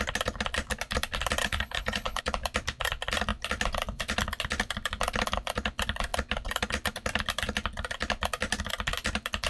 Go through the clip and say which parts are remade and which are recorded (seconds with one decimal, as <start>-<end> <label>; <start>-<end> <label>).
0.0-1.4 recorded; 1.4-2.2 remade; 2.2-9.5 recorded